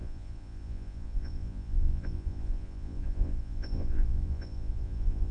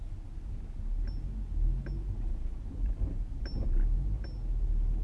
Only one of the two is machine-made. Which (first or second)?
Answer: first